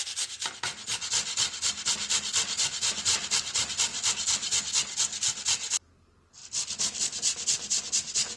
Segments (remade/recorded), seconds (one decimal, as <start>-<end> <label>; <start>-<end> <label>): 0.0-8.4 recorded